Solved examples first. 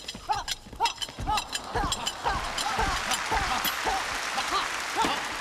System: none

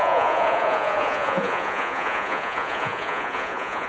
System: vocoder, Vocos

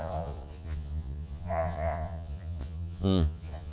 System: vocoder, Vocos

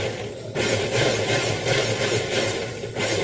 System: none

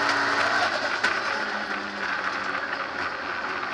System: none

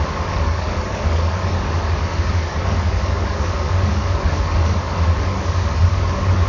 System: codec, DAC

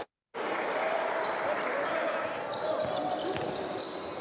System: none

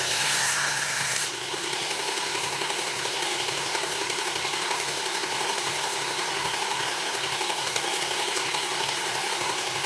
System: codec, SNAC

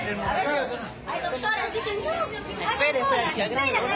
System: none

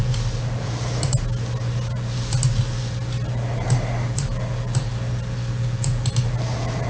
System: none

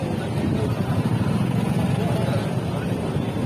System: none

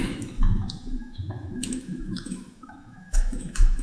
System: autoencoder, DAC-VAE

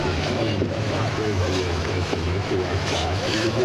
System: autoencoder, DAC-VAE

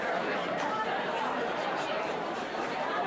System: vocoder, BigVGAN v2